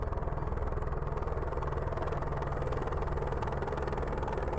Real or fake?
real